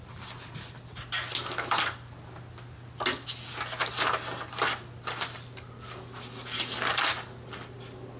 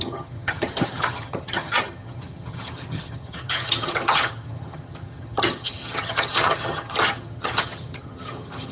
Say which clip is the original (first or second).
first